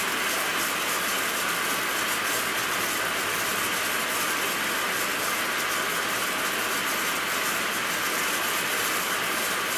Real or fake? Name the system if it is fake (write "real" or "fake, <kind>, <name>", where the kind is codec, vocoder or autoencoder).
real